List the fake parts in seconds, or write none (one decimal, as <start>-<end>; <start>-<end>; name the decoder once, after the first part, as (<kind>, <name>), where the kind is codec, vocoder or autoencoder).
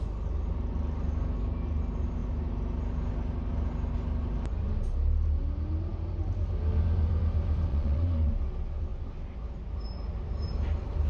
7.7-8.3 (vocoder, Vocos)